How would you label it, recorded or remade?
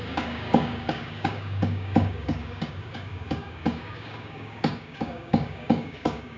remade